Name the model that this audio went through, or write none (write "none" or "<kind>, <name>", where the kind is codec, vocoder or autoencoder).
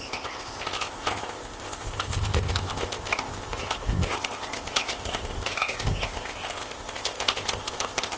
codec, ZipCodec